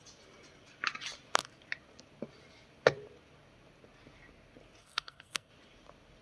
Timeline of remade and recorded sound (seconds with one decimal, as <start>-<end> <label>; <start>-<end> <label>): 0.0-4.8 recorded; 4.8-5.5 remade; 5.5-6.2 recorded